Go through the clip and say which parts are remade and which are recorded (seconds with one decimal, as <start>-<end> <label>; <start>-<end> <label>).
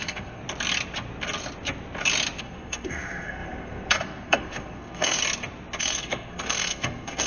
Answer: 0.0-0.4 remade; 0.4-2.4 recorded; 2.4-5.2 remade; 5.2-5.8 recorded; 5.8-7.3 remade